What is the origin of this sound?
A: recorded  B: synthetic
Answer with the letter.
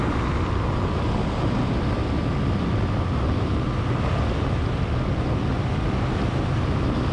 A